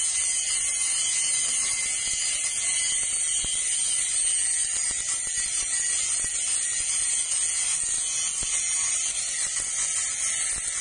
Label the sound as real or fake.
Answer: real